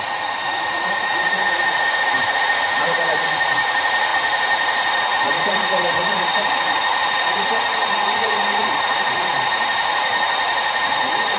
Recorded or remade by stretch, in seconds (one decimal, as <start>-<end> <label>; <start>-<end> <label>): 0.0-11.4 remade